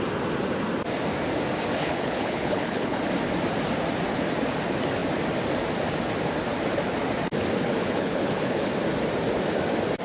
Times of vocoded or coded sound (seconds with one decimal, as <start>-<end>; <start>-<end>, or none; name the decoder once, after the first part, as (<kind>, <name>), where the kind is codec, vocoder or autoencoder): 1.8-3.0 (codec, HILCodec); 7.7-8.7